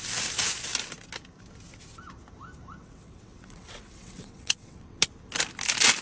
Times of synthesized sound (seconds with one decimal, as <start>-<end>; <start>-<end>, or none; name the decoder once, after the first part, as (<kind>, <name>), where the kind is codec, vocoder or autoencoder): 2.8-5.0 (vocoder, WaveNeXt)